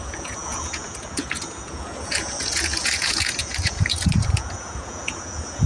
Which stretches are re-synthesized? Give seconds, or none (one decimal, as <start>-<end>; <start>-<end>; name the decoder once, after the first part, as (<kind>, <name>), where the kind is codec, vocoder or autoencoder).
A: 0.0-5.7 (vocoder, Vocos)